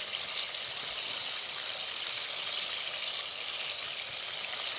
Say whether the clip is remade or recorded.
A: recorded